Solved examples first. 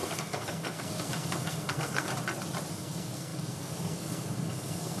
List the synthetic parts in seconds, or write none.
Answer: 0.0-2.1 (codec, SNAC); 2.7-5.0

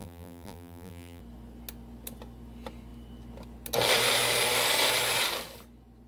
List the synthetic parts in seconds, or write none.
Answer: 0.0-1.2 (vocoder, BigVGAN v2)

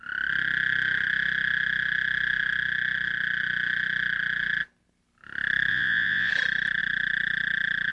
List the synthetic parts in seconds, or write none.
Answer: 5.7-6.3 (vocoder, Vocos)

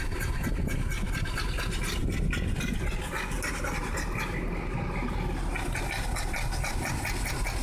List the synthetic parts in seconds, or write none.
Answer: none

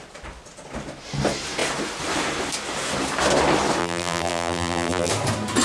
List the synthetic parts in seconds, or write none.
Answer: 3.8-5.1 (vocoder, BigVGAN v2)

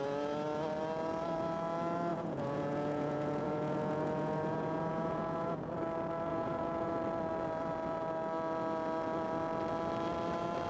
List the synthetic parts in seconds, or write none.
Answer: 2.1-5.7 (vocoder, Vocos); 6.3-6.9

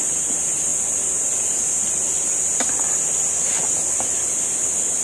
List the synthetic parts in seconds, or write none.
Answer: none

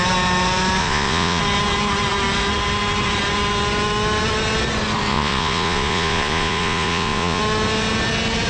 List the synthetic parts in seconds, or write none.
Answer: 0.8-1.4 (vocoder, Vocos); 5.1-7.4